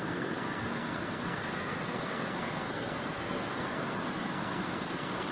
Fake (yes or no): yes